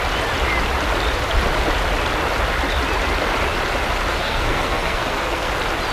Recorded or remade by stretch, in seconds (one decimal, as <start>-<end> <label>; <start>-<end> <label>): 0.0-4.2 recorded; 4.2-5.5 remade; 5.5-5.9 recorded